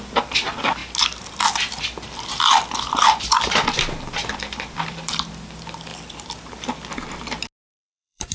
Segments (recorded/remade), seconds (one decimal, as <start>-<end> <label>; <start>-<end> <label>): 0.0-0.8 remade; 0.8-4.3 recorded; 4.3-5.9 remade; 5.9-7.6 recorded; 7.6-8.3 remade